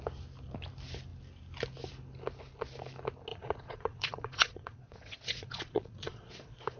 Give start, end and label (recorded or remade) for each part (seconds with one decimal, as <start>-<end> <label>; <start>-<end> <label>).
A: 0.0-3.3 recorded; 3.3-6.8 remade